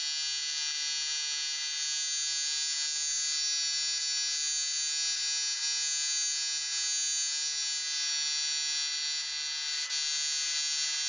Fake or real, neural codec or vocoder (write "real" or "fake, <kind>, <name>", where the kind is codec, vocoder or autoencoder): real